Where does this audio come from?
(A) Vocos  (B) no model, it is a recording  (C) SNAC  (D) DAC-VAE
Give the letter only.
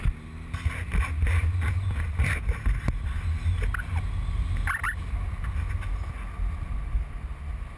B